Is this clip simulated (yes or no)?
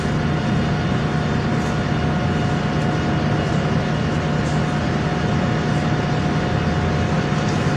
no